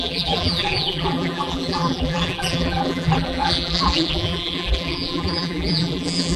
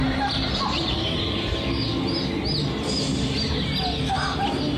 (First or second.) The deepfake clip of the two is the first